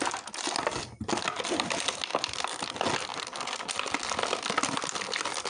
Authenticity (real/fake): real